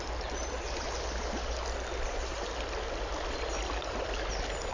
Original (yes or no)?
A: yes